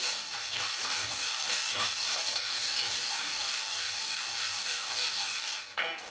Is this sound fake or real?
fake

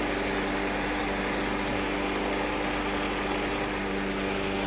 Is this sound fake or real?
real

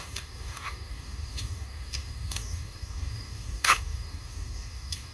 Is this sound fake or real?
fake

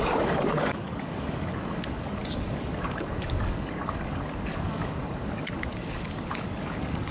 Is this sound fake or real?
fake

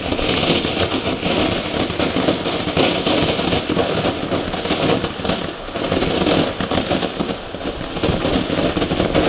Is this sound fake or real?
real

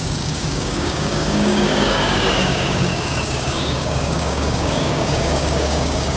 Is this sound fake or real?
fake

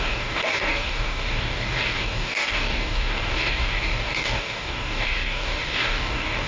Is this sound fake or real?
fake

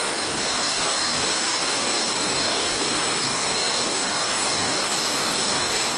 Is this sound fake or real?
fake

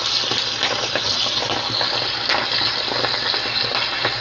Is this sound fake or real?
real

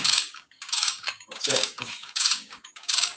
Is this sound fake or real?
fake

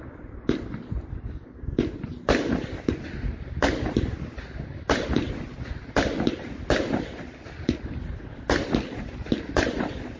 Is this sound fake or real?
real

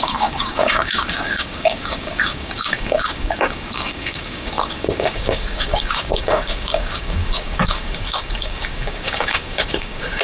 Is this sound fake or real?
fake